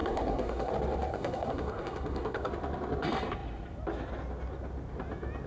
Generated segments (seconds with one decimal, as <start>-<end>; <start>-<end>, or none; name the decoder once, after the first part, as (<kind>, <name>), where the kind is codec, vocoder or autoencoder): 0.0-0.7 (codec, SNAC); 1.1-2.5

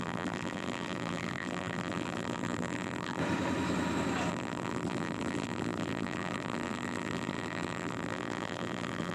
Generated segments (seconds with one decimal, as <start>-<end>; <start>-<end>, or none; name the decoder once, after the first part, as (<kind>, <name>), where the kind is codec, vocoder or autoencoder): 0.0-3.2 (vocoder, BigVGAN v2); 4.3-9.1

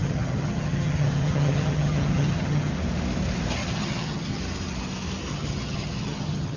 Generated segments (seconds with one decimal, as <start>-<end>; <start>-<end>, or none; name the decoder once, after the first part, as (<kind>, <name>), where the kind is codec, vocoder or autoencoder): 0.0-2.7 (vocoder, HiFi-GAN); 3.6-4.4; 5.3-6.6